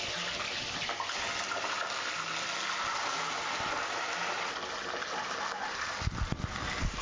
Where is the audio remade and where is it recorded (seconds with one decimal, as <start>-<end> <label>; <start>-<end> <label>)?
0.0-7.0 recorded